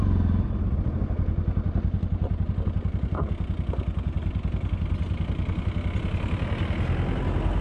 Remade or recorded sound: recorded